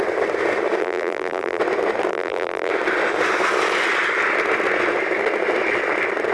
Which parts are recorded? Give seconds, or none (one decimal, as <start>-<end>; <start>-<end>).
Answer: 0.0-0.8; 1.6-2.1; 2.7-6.3